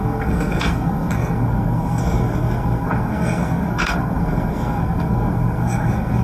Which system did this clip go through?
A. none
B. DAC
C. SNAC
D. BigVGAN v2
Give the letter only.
C